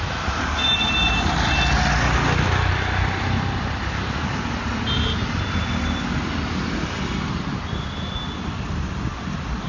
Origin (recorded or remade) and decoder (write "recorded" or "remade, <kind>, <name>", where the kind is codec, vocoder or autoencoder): recorded